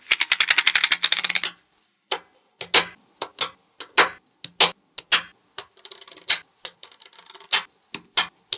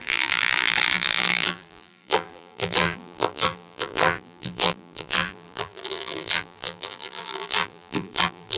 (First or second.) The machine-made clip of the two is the second